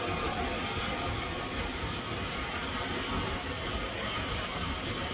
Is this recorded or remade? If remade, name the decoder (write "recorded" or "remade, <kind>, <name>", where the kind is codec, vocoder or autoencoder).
recorded